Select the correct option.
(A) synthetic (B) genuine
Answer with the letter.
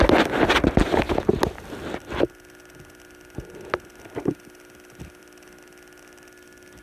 B